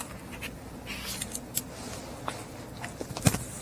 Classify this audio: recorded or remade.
recorded